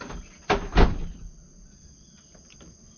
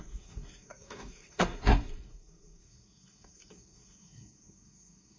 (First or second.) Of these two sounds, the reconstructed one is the second